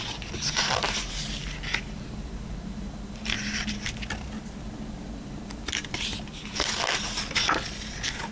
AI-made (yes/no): no